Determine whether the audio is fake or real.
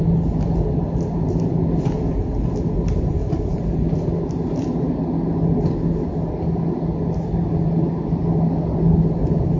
real